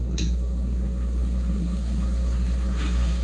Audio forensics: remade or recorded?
remade